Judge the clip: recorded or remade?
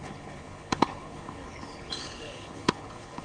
remade